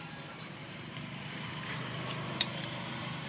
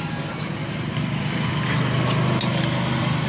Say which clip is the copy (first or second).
first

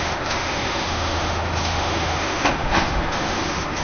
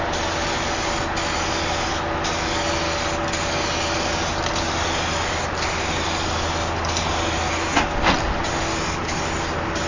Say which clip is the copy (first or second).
first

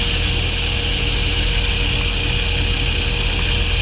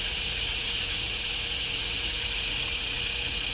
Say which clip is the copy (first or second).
second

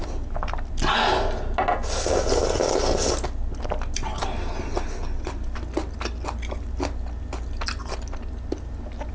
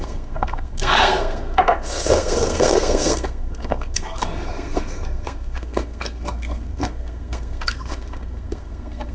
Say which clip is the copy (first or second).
second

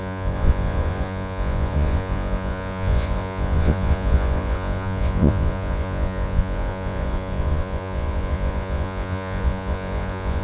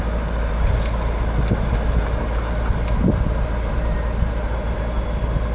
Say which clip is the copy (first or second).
first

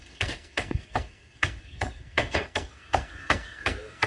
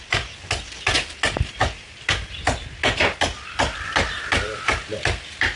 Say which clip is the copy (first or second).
first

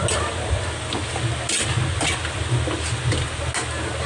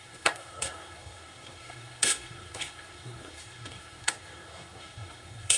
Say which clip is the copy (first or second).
second